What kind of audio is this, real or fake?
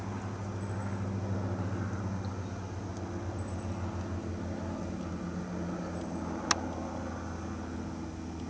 real